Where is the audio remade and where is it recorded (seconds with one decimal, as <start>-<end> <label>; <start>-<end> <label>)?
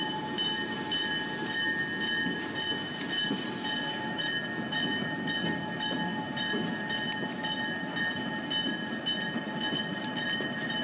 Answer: 0.0-10.8 recorded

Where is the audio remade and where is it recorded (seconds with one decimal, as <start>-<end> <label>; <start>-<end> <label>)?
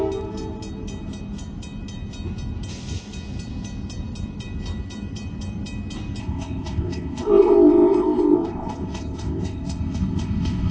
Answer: 0.0-6.2 recorded; 6.2-10.7 remade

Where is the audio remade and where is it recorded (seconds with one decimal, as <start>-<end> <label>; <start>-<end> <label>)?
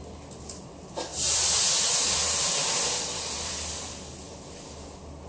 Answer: 0.0-5.3 recorded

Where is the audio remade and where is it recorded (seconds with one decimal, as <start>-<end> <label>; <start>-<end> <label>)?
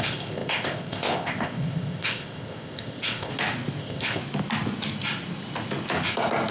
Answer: 0.0-3.3 remade; 3.3-3.8 recorded; 3.8-4.2 remade; 4.2-6.5 recorded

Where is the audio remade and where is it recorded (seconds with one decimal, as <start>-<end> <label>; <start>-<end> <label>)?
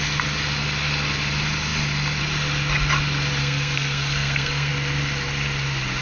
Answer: 0.0-3.4 recorded; 3.4-4.7 remade; 4.7-6.0 recorded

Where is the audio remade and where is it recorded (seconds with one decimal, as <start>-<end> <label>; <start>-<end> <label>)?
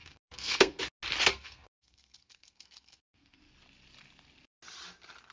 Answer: 0.0-0.8 remade; 0.8-1.3 recorded; 1.3-3.4 remade; 3.4-5.3 recorded